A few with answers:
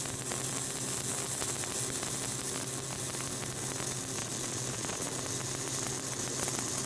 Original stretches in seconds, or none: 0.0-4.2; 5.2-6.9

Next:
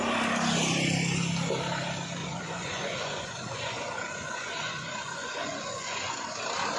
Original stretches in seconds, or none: 0.0-2.2; 6.3-6.8